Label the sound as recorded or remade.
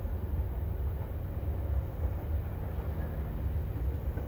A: recorded